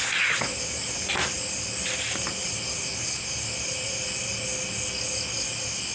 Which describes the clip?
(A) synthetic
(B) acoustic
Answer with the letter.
B